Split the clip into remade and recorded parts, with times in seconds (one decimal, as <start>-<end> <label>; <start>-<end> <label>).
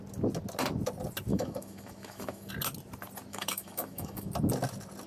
0.0-1.3 recorded; 1.3-2.5 remade; 2.5-3.3 recorded; 3.3-4.3 remade; 4.3-5.1 recorded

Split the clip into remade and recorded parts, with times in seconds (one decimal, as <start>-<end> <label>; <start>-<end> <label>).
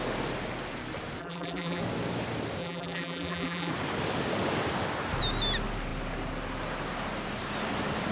0.0-1.2 recorded; 1.2-1.8 remade; 1.8-2.6 recorded; 2.6-3.7 remade; 3.7-8.1 recorded